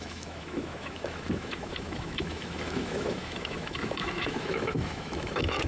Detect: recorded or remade remade